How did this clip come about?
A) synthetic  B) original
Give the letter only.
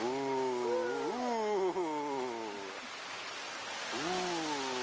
B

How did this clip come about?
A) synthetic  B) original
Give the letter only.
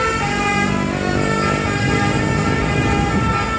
B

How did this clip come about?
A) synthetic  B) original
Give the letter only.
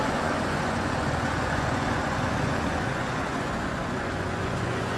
A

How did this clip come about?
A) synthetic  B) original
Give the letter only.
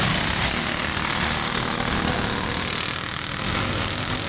B